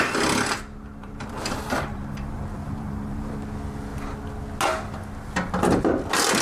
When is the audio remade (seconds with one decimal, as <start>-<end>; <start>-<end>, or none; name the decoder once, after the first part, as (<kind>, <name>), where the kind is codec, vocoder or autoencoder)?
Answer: 1.0-3.3 (vocoder, BigVGAN v2)

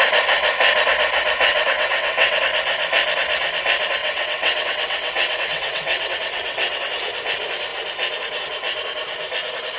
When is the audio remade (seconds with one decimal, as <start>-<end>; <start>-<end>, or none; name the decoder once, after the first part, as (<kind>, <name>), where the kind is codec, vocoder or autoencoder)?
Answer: 1.5-2.4 (vocoder, WaveNeXt); 4.0-6.9

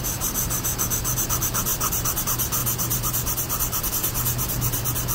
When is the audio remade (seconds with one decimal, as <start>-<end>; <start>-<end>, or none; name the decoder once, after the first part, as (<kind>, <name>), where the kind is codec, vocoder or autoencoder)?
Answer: 0.0-1.7 (vocoder, BigVGAN v2); 2.2-5.1